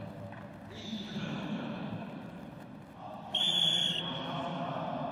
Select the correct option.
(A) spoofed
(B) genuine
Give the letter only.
A